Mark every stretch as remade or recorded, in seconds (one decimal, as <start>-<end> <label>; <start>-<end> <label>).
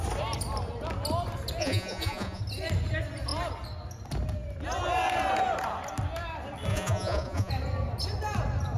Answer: 0.0-1.6 recorded; 1.6-2.4 remade; 2.4-6.7 recorded; 6.7-7.5 remade; 7.5-8.8 recorded